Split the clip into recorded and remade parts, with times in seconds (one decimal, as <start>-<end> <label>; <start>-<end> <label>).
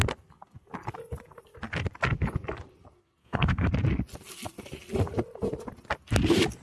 0.0-3.2 recorded; 3.2-3.7 remade; 3.7-6.6 recorded